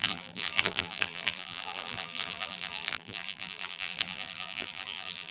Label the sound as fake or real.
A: fake